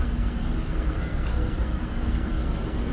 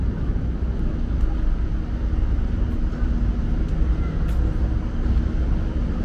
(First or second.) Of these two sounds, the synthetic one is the first